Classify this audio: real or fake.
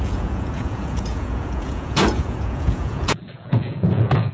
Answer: fake